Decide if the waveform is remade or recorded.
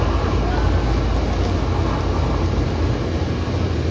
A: recorded